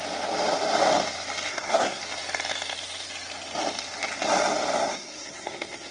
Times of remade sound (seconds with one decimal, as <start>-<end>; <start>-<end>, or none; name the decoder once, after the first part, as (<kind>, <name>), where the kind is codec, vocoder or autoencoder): 1.5-2.0 (codec, SNAC); 4.9-5.9